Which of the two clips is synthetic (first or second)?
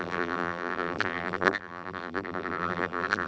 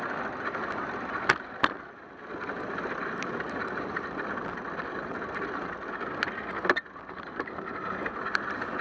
first